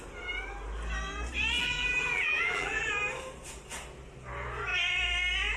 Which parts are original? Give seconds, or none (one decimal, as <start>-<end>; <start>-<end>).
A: 0.0-1.6; 2.9-5.6